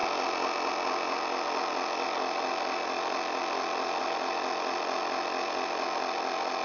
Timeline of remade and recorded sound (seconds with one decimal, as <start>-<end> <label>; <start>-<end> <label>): 0.0-6.6 recorded